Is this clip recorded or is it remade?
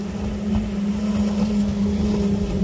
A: recorded